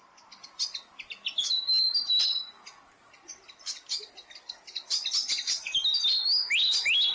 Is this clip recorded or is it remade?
recorded